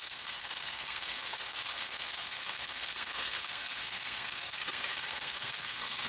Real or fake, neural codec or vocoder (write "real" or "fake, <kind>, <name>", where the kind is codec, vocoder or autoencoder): fake, codec, SNAC